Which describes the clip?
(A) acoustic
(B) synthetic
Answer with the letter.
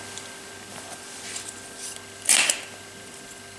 A